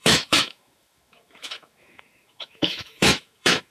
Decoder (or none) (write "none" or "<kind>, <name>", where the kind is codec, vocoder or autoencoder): autoencoder, DAC-VAE